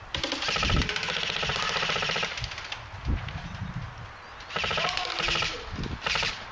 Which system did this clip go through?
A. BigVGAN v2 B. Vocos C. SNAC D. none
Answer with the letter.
D